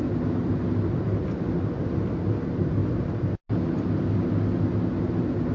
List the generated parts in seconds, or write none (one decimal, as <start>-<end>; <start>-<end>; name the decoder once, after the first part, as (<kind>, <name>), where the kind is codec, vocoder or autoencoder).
none